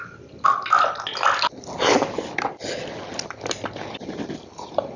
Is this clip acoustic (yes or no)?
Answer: yes